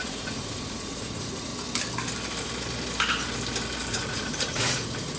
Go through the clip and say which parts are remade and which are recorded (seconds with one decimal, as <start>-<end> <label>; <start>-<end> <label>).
0.0-1.5 remade; 1.5-3.9 recorded; 3.9-5.2 remade